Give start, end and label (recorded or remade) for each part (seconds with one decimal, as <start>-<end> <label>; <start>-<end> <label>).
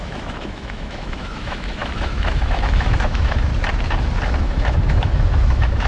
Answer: 0.0-3.5 remade; 3.5-4.4 recorded; 4.4-5.9 remade